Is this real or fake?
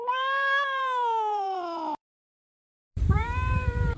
fake